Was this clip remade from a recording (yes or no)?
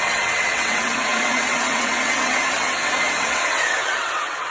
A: yes